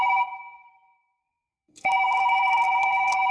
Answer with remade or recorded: remade